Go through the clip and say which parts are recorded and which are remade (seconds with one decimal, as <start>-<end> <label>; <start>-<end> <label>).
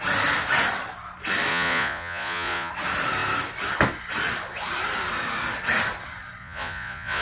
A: 0.0-1.5 recorded; 1.5-2.7 remade; 2.7-6.4 recorded; 6.4-7.2 remade